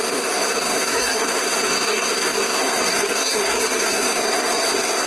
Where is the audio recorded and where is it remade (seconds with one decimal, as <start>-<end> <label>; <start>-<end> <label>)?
0.0-5.1 remade